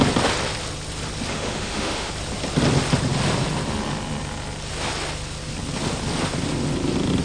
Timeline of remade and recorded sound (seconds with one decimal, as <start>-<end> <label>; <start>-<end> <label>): 0.0-1.3 recorded; 1.3-2.1 remade; 2.1-7.2 recorded